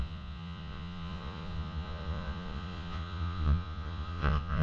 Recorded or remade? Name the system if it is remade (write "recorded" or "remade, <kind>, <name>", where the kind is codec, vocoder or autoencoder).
remade, vocoder, Vocos